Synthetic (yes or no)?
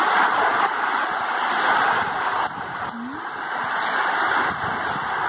no